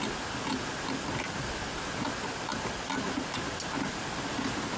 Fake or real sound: real